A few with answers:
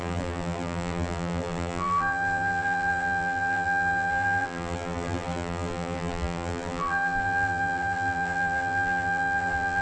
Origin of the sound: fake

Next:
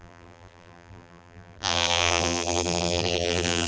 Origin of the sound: fake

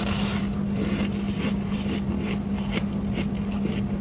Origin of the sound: real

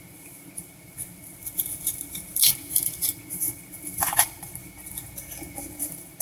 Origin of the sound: fake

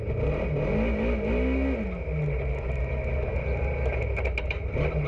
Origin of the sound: real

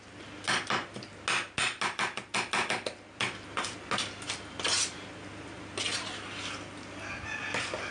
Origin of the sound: real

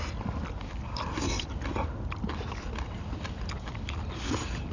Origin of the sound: fake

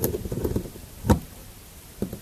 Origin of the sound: fake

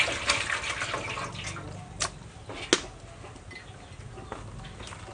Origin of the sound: real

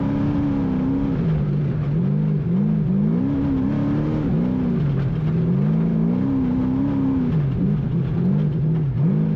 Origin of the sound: real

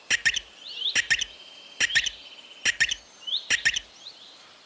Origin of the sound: real